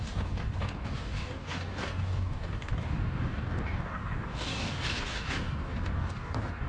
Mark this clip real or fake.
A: fake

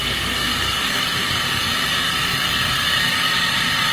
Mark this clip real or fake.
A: fake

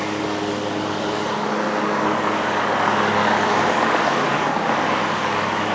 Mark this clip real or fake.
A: fake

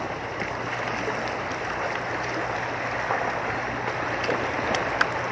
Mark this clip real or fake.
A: real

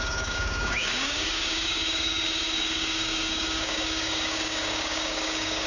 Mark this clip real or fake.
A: fake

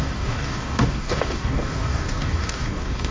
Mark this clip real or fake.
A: fake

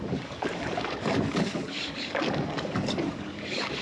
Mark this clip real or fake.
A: fake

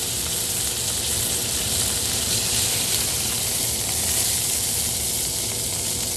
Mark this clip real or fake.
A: real